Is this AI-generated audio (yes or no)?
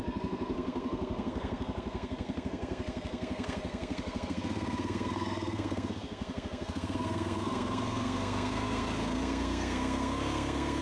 yes